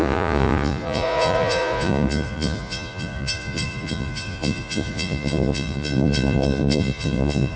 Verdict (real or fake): fake